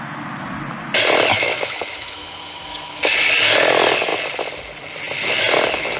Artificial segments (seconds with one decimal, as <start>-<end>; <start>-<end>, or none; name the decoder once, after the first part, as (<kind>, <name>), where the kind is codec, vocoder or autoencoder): 1.3-3.0 (autoencoder, DAC-VAE)